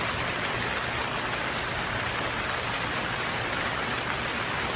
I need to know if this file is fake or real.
real